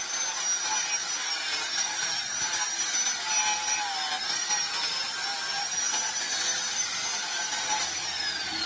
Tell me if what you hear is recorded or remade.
recorded